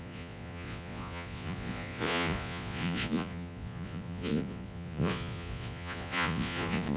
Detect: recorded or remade remade